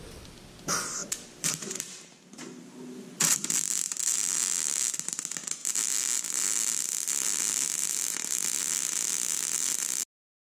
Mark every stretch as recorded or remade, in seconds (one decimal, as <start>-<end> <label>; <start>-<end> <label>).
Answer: 0.0-1.0 recorded; 1.0-1.7 remade; 1.7-10.5 recorded